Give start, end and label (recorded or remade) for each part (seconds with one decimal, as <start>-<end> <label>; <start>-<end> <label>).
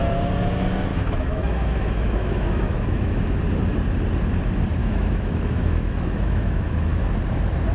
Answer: 0.0-0.9 recorded; 0.9-3.2 remade; 3.2-4.8 recorded; 4.8-7.1 remade; 7.1-7.7 recorded